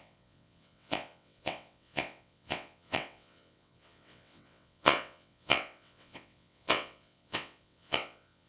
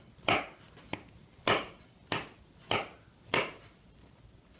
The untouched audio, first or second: second